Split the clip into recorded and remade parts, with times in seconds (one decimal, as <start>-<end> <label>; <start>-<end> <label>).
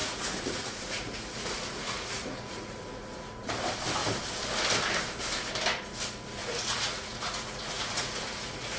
0.0-3.5 remade; 3.5-6.4 recorded; 6.4-8.8 remade